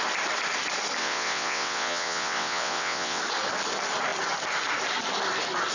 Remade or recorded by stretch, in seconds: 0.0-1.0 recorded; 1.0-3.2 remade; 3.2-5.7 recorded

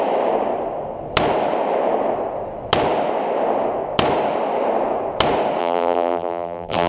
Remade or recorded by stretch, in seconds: 0.0-5.6 recorded; 5.6-6.9 remade

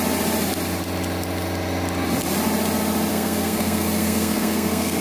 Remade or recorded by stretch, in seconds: 0.0-3.1 recorded; 3.1-5.0 remade